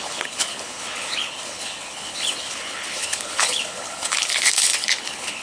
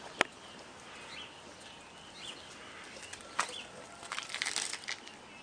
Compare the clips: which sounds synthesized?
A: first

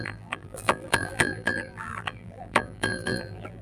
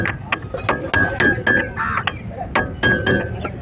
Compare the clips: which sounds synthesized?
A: first